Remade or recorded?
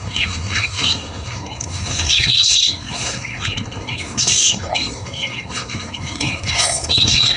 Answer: remade